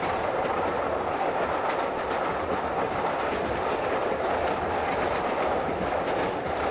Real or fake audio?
real